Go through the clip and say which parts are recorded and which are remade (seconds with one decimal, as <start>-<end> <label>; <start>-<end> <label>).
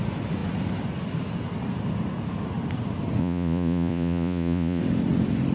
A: 0.0-3.2 recorded; 3.2-4.8 remade; 4.8-5.5 recorded